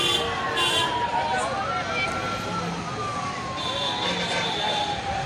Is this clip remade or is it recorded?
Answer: recorded